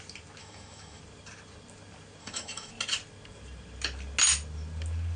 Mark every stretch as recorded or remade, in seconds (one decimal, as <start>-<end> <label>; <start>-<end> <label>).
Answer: 0.0-0.4 recorded; 0.4-1.0 remade; 1.0-2.2 recorded; 2.2-2.7 remade; 2.7-5.2 recorded

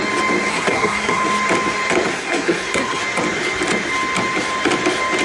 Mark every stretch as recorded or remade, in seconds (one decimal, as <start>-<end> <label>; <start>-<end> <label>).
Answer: 0.0-0.5 recorded; 0.5-1.2 remade; 1.2-2.1 recorded; 2.1-3.0 remade; 3.0-5.2 recorded

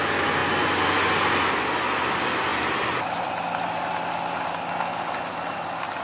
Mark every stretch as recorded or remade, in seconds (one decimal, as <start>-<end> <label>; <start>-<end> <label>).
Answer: 0.0-6.0 recorded

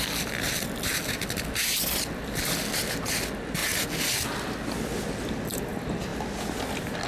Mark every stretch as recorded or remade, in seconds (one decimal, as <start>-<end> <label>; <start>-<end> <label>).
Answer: 0.0-7.1 recorded

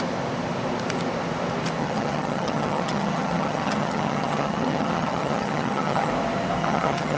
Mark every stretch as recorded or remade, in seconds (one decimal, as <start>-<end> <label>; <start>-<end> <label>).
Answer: 0.0-1.8 recorded; 1.8-6.1 remade; 6.1-6.6 recorded; 6.6-7.2 remade